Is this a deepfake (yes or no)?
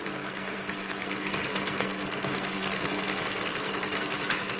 yes